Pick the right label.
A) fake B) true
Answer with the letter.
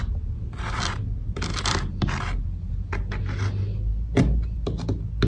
B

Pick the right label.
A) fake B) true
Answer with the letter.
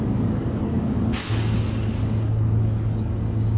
A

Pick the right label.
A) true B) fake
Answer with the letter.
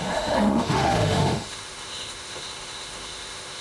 B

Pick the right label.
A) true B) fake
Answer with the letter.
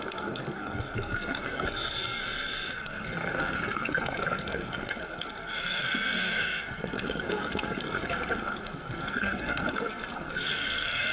B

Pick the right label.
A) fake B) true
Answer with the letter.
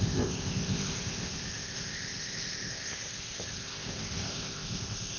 A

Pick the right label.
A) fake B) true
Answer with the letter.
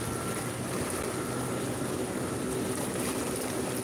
B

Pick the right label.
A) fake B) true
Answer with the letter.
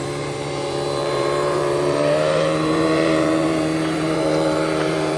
A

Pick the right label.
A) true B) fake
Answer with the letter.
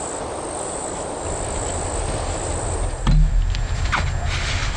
A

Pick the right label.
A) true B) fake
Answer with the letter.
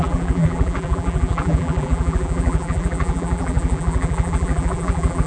B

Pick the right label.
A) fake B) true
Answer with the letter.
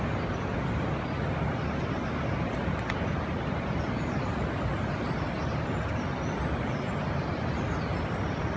B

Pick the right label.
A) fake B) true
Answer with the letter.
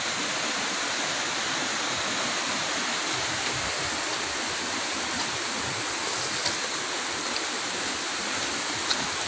B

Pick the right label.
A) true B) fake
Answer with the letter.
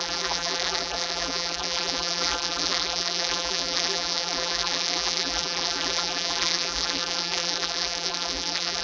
B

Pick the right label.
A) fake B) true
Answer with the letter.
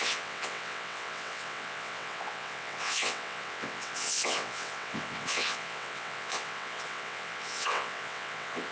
A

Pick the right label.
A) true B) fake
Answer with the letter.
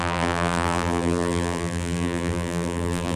B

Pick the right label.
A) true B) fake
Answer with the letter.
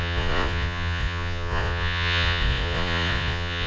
B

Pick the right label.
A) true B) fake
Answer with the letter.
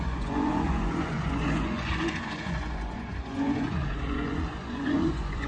B